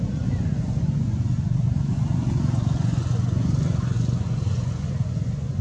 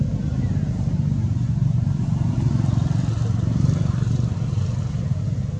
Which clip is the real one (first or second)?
second